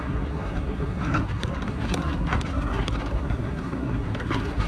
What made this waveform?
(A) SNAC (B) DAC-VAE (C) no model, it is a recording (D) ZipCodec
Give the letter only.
A